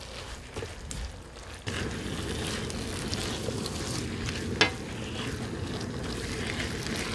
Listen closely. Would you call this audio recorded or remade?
recorded